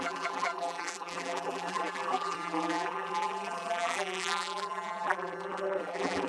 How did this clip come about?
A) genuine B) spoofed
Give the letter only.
B